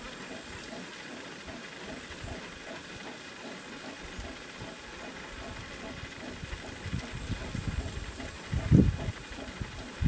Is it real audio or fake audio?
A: real